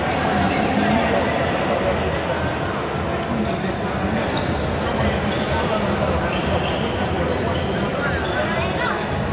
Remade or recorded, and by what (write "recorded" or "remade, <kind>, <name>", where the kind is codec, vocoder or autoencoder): recorded